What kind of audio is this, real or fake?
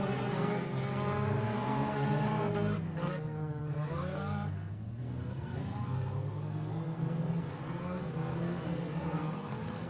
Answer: fake